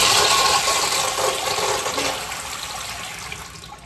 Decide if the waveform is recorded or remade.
recorded